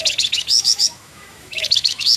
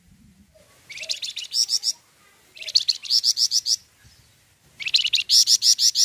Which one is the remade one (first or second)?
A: first